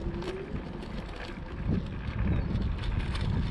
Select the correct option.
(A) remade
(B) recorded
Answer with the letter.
B